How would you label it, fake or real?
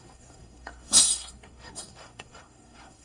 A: fake